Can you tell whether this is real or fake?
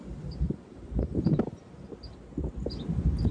real